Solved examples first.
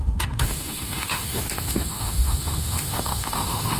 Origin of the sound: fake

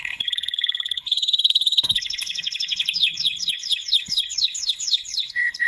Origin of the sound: fake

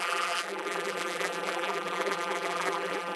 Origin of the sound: fake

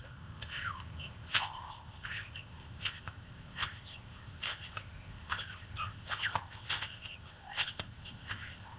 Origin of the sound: fake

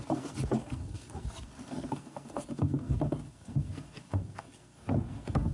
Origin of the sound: fake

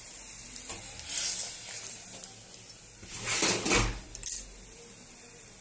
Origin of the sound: real